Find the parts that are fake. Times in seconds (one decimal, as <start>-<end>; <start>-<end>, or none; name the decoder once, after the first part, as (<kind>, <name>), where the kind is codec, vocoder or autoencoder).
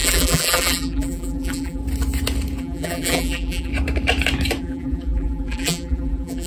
0.0-1.8 (vocoder, BigVGAN v2); 2.6-3.7; 4.6-6.5